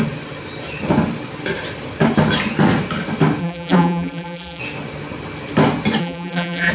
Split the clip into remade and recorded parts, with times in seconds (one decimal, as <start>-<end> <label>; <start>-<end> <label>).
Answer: 0.0-3.4 recorded; 3.4-4.6 remade; 4.6-6.0 recorded; 6.0-6.7 remade

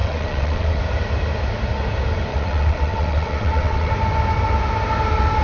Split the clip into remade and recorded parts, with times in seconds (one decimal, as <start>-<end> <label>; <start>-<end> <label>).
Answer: 0.0-0.8 remade; 0.8-2.3 recorded; 2.3-3.9 remade; 3.9-5.4 recorded

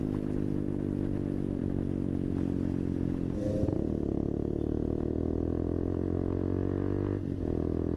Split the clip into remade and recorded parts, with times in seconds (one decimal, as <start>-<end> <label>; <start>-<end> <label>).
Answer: 0.0-8.0 recorded